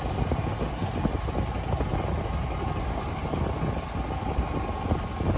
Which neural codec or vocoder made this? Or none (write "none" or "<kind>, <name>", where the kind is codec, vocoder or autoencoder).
none